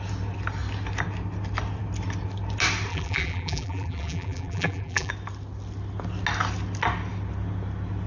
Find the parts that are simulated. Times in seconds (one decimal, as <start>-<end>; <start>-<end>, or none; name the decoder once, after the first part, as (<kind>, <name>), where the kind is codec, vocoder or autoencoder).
2.9-5.1 (vocoder, BigVGAN v2)